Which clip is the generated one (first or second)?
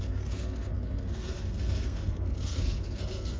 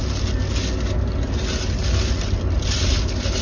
first